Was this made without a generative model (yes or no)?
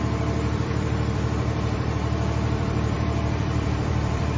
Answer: no